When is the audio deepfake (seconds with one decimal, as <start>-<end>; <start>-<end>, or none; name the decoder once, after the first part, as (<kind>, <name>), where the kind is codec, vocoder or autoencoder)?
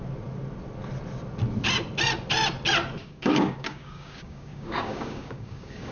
3.0-5.9 (codec, DAC)